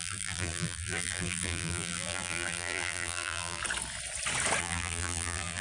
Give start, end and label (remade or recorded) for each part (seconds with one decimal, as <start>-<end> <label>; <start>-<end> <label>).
0.0-3.6 remade; 3.6-4.6 recorded; 4.6-5.6 remade